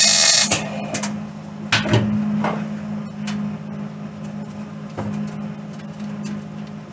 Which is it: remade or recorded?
recorded